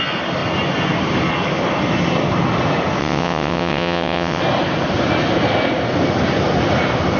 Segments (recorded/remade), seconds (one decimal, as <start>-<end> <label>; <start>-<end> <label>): 0.0-3.0 recorded; 3.0-4.4 remade; 4.4-7.2 recorded